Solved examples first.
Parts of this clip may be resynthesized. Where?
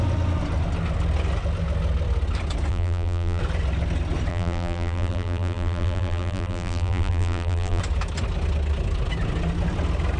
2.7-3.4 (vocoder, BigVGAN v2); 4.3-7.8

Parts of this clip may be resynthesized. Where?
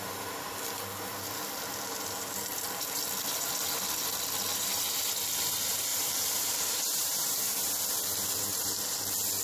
5.9-7.4 (vocoder, BigVGAN v2)